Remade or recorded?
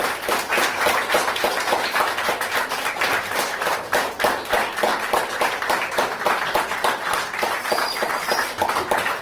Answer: recorded